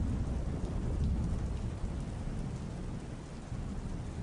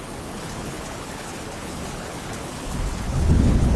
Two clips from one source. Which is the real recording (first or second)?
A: first